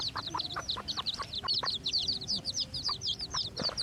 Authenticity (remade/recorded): remade